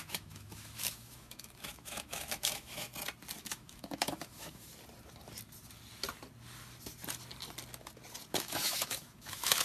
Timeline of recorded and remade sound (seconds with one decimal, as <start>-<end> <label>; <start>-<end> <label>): 0.0-2.9 remade; 2.9-3.4 recorded; 3.4-4.7 remade; 4.7-8.3 recorded; 8.3-9.6 remade